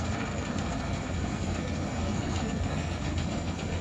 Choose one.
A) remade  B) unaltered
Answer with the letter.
A